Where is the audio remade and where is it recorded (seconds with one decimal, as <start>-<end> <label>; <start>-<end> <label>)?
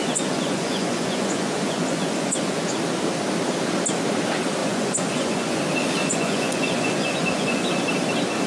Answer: 0.0-2.6 remade; 2.6-4.6 recorded; 4.6-5.6 remade; 5.6-6.0 recorded; 6.0-7.7 remade; 7.7-8.5 recorded